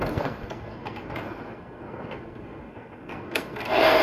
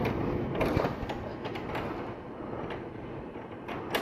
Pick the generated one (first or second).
first